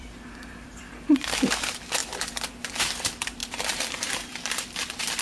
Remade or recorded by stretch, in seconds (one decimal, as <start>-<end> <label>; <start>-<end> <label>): 0.0-5.2 remade